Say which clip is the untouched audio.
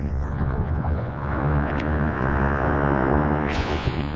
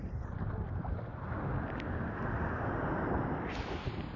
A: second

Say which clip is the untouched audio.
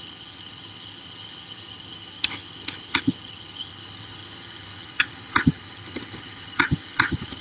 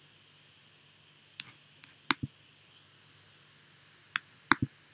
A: second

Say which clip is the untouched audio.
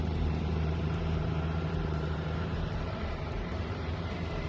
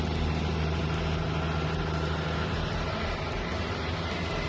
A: second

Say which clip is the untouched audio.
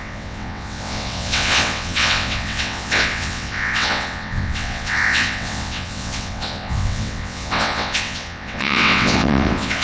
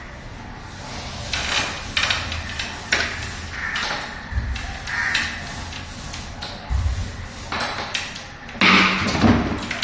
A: second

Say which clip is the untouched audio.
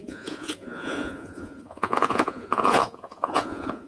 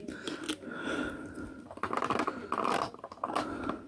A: second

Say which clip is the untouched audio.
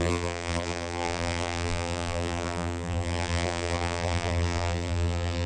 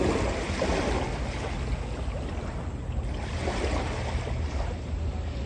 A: second